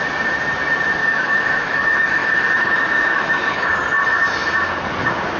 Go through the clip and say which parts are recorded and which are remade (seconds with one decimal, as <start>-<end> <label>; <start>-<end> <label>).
0.0-1.0 recorded; 1.0-3.7 remade; 3.7-5.4 recorded

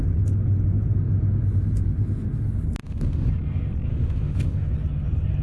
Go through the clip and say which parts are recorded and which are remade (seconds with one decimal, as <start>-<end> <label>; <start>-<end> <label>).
0.0-2.8 recorded; 2.8-3.3 remade; 3.3-3.9 recorded; 3.9-4.7 remade; 4.7-5.4 recorded

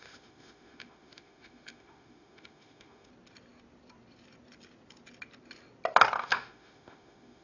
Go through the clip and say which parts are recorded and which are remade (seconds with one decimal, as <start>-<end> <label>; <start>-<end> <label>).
0.0-3.1 remade; 3.1-6.2 recorded; 6.2-7.4 remade

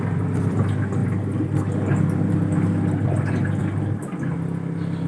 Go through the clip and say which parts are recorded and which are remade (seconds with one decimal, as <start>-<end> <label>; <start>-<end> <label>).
0.0-5.1 recorded

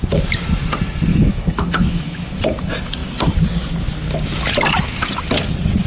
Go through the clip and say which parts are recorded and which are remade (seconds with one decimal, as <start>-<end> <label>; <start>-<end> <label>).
0.0-1.1 recorded; 1.1-2.4 remade; 2.4-5.9 recorded

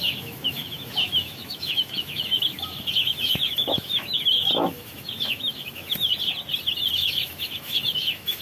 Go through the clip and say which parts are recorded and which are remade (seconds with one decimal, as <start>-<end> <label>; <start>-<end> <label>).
0.0-6.1 remade; 6.1-6.9 recorded; 6.9-8.4 remade

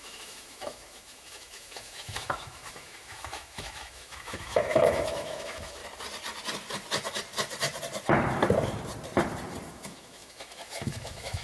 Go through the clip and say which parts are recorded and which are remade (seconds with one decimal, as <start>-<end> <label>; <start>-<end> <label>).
0.0-5.8 remade; 5.8-9.7 recorded; 9.7-11.4 remade